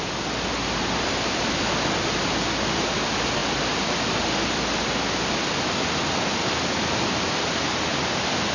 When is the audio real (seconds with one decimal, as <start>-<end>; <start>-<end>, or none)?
0.0-8.5

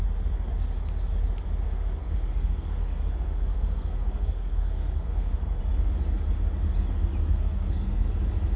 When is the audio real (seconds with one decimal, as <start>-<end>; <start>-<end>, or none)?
0.0-2.0; 5.6-7.2; 8.1-8.6

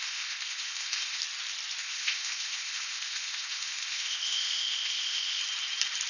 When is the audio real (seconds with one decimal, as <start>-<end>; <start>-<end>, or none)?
1.2-1.8; 5.4-6.1